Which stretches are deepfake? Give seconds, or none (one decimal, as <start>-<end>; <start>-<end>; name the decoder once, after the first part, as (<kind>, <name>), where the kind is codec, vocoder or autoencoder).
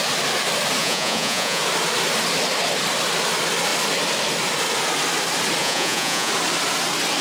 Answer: 0.8-1.6 (vocoder, Vocos); 5.6-6.3